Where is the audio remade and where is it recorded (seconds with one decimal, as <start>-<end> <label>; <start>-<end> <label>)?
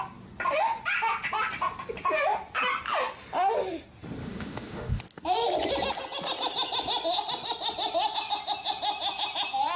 0.0-4.2 recorded; 4.2-5.0 remade; 5.0-9.8 recorded